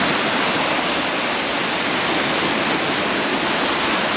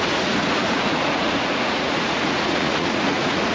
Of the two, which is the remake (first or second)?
second